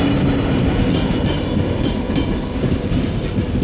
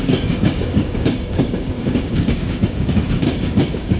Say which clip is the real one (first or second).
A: first